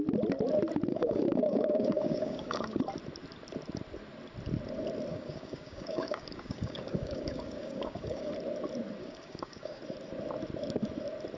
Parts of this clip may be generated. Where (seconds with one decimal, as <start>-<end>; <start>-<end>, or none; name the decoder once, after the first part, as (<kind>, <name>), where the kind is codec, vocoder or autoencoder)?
0.9-2.8 (codec, DAC); 5.1-8.3; 9.0-9.8